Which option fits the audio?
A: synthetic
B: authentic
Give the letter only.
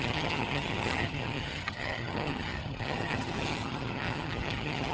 A